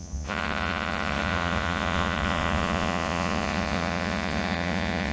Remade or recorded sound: remade